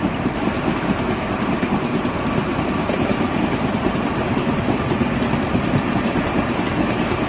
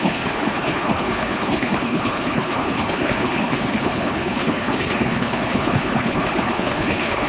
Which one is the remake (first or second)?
second